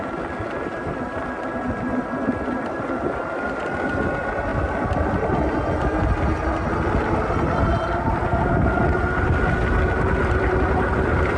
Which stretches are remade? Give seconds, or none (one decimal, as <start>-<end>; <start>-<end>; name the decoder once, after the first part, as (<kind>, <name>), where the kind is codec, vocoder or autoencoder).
none